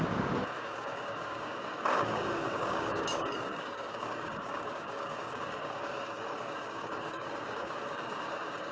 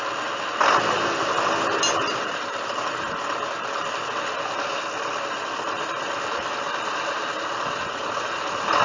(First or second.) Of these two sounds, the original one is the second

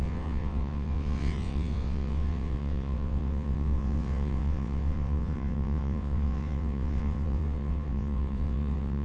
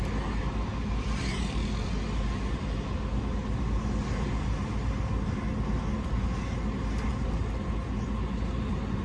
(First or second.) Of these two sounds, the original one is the second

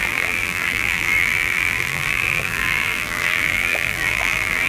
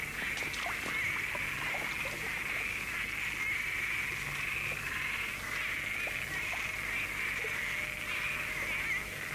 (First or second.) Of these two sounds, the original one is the second